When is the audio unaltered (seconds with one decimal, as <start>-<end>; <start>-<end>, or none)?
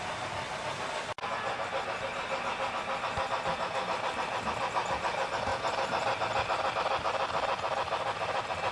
0.0-8.7